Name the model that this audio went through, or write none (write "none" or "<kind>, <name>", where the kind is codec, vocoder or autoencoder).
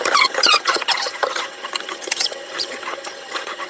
vocoder, HiFi-GAN